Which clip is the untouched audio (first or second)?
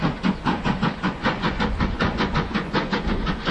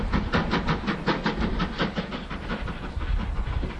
second